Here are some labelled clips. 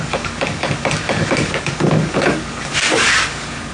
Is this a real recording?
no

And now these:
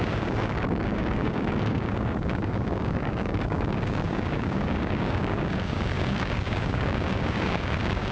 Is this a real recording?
no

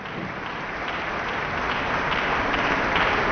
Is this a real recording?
yes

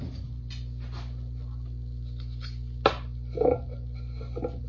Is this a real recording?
yes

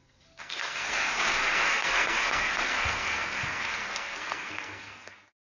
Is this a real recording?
no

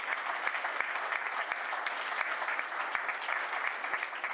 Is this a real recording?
yes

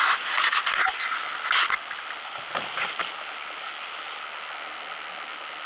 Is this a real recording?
yes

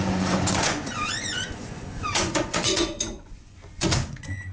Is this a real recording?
no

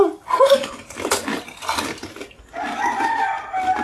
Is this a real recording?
yes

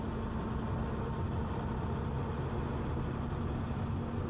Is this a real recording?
yes